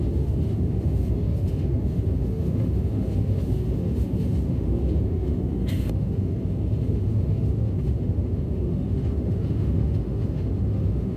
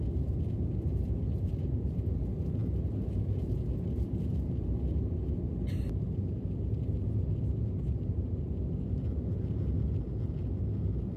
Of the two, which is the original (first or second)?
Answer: second